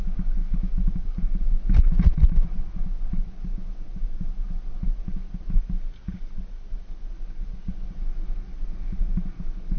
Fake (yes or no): no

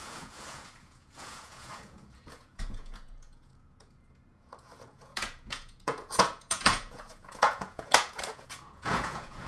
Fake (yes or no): yes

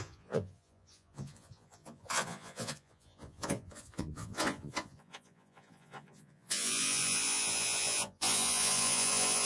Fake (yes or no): yes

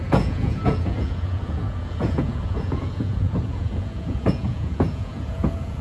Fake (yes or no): yes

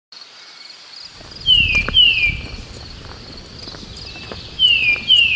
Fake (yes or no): no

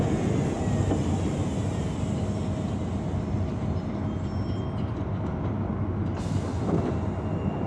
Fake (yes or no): no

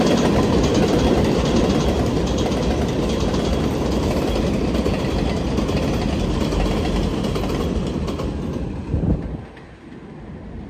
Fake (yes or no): no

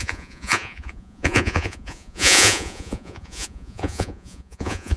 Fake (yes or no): yes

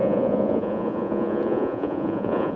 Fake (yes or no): yes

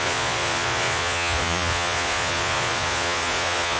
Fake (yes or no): yes